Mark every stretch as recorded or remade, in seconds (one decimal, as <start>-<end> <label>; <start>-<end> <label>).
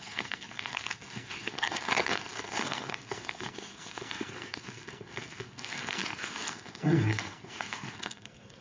0.0-8.6 remade